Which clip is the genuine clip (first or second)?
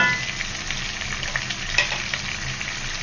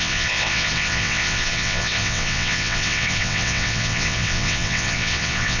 first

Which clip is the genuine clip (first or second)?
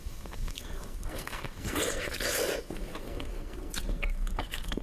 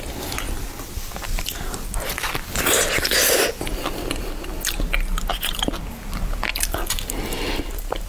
second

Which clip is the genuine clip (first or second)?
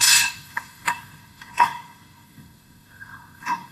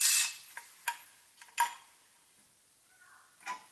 second